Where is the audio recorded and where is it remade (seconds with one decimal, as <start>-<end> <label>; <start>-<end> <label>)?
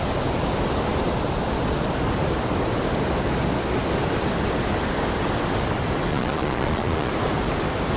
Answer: 0.0-6.1 recorded; 6.1-7.1 remade; 7.1-8.0 recorded